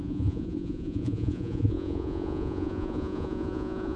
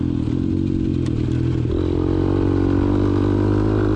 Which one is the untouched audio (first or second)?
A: second